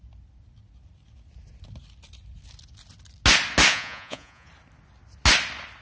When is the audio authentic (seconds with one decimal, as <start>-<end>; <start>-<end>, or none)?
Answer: 0.0-3.7; 4.5-5.8